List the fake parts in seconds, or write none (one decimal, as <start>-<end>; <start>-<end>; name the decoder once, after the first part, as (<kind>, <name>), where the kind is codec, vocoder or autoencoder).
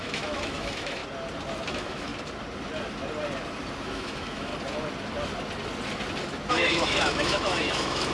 0.0-1.0 (autoencoder, DAC-VAE); 1.7-2.1; 3.8-4.5; 6.5-8.1